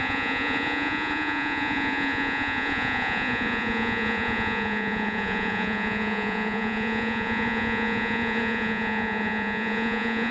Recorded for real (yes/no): no